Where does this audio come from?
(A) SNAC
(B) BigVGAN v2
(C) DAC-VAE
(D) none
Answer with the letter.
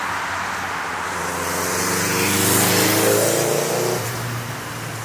D